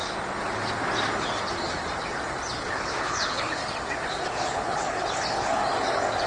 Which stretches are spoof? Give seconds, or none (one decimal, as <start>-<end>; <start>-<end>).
2.6-3.6; 4.1-5.6